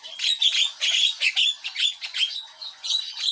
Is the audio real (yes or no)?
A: no